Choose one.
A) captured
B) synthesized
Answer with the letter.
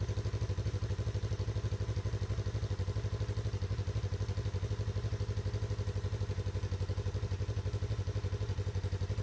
A